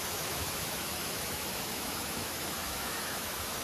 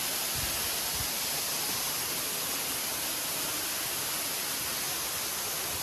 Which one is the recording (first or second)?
second